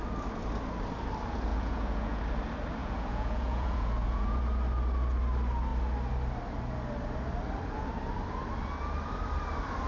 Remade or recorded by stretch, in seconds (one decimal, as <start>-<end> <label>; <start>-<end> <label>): 0.0-1.5 recorded; 1.5-2.2 remade; 2.2-2.8 recorded; 2.8-4.4 remade; 4.4-9.9 recorded